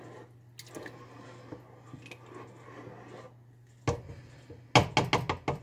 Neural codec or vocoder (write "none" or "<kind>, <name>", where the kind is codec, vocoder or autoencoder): none